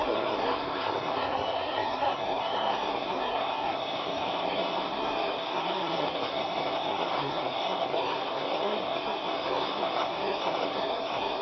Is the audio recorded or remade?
remade